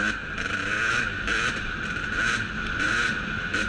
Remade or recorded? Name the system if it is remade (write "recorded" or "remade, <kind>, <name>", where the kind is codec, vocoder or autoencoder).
recorded